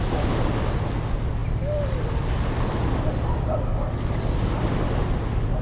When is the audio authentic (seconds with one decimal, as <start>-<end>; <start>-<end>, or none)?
0.0-5.6